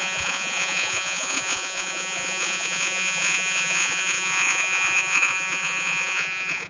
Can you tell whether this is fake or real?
fake